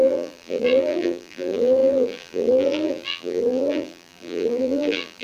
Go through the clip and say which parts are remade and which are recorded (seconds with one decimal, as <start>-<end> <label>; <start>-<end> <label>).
0.0-5.2 remade

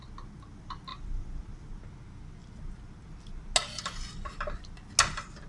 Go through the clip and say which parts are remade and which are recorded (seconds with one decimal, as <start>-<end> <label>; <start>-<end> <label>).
0.0-0.9 recorded; 0.9-1.7 remade; 1.7-5.5 recorded

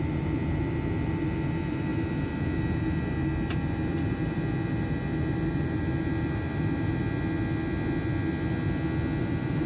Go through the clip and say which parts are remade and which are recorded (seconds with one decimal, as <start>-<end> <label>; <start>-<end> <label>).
0.0-7.0 remade; 7.0-9.2 recorded; 9.2-9.7 remade

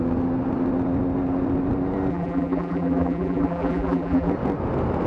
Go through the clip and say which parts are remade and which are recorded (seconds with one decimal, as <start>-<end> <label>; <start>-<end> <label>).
0.0-2.1 recorded; 2.1-4.3 remade; 4.3-5.1 recorded

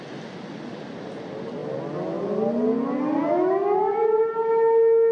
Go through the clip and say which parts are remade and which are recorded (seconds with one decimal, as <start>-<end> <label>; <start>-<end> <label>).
0.0-5.1 recorded

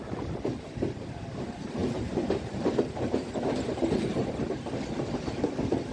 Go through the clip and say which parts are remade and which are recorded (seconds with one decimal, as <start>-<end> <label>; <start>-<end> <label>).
0.0-4.1 remade; 4.1-5.0 recorded; 5.0-5.9 remade